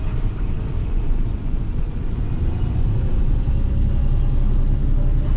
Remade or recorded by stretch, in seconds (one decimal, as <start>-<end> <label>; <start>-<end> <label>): 0.0-0.8 recorded; 0.8-2.3 remade; 2.3-2.7 recorded; 2.7-3.5 remade; 3.5-5.4 recorded